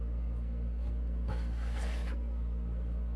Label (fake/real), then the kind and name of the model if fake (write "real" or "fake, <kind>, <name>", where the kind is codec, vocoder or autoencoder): fake, codec, SNAC